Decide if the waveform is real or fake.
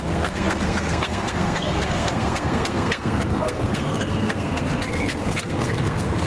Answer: fake